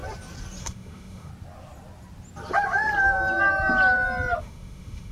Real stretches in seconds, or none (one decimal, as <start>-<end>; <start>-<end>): 0.0-0.6; 1.3-4.4